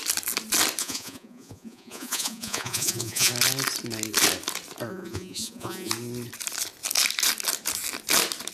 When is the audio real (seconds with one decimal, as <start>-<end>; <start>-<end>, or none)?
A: 0.0-0.8; 3.3-4.9; 5.9-8.5